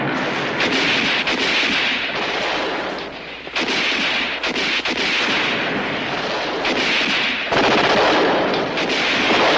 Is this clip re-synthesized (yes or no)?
no